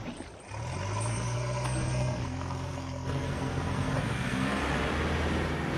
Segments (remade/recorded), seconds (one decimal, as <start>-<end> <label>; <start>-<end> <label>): 0.0-1.1 recorded; 1.1-4.6 remade; 4.6-5.8 recorded